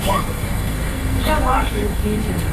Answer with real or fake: fake